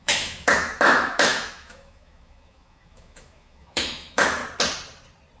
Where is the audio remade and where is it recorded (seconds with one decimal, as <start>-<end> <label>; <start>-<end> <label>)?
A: 0.0-4.4 remade; 4.4-5.4 recorded